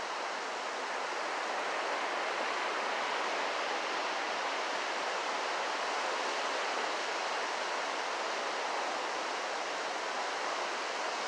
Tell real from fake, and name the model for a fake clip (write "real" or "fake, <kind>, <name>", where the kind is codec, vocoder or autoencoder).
real